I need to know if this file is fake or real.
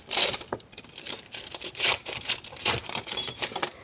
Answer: fake